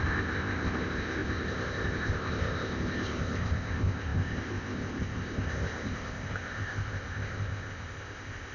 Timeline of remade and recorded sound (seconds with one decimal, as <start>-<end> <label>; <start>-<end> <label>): 0.0-8.5 remade